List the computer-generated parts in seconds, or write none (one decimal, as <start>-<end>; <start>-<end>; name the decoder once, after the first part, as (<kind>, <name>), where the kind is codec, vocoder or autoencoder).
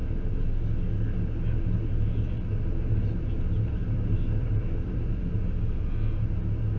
3.8-5.4 (vocoder, BigVGAN v2)